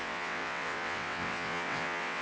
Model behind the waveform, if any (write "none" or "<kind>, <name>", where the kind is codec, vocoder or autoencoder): vocoder, WaveNeXt